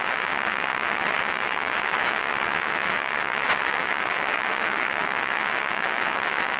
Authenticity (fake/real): fake